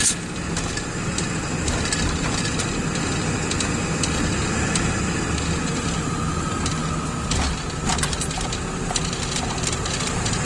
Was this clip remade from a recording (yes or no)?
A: no